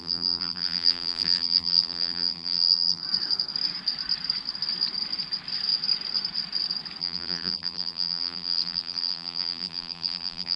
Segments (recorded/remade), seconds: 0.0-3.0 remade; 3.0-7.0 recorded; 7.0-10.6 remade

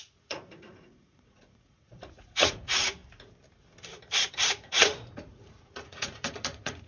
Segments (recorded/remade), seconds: 0.0-3.0 remade; 3.0-4.3 recorded; 4.3-6.9 remade

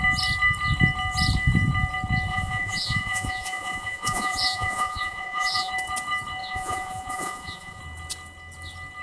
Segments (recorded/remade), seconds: 0.0-2.3 recorded; 2.3-5.7 remade; 5.7-6.4 recorded; 6.4-7.8 remade; 7.8-9.0 recorded